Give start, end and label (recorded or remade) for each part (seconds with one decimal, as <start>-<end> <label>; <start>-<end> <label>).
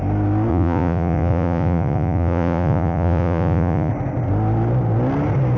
0.0-0.5 recorded; 0.5-3.9 remade; 3.9-5.6 recorded